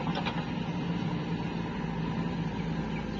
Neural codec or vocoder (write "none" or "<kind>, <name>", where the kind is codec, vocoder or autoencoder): none